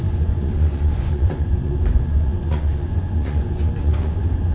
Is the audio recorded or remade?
remade